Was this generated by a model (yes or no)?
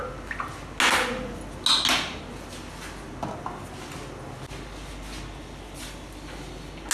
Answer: no